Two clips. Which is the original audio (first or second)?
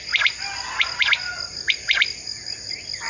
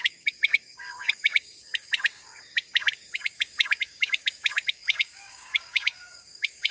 first